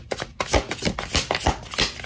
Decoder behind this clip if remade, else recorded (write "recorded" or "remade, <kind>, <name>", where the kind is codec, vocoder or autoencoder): recorded